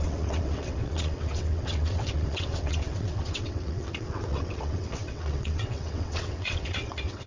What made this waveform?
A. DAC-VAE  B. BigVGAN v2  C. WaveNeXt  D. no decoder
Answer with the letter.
C